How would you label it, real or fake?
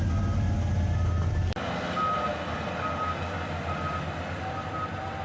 real